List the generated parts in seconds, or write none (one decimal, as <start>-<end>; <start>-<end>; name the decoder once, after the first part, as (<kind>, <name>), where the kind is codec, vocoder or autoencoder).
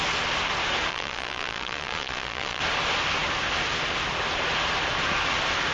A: 0.9-2.6 (vocoder, Vocos)